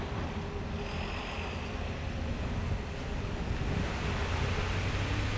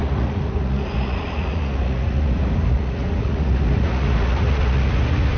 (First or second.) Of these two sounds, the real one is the first